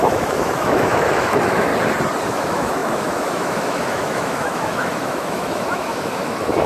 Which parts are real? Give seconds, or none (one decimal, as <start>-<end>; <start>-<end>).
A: 1.7-2.3

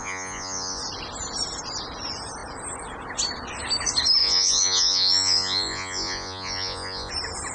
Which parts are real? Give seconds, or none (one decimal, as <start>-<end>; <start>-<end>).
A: 0.8-4.2; 7.1-7.5

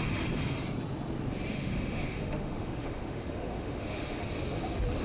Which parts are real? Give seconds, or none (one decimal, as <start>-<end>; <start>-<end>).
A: 0.0-1.5; 4.2-5.0

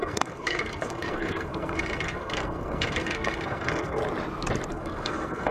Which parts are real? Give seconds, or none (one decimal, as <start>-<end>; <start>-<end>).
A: 4.0-4.7

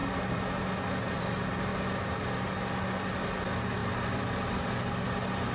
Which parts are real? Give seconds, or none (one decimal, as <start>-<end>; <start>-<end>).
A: 0.0-3.8; 4.5-5.5